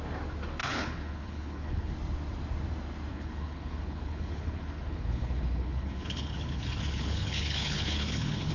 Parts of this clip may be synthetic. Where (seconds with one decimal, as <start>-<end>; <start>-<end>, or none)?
0.6-1.9; 3.1-8.5